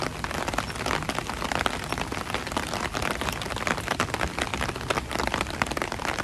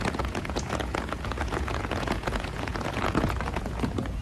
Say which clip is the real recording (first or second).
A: first